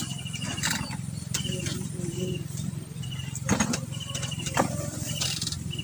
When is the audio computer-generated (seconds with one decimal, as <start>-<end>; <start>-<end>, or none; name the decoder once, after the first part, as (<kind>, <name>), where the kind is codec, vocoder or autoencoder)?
0.5-1.6 (vocoder, BigVGAN v2); 2.1-5.8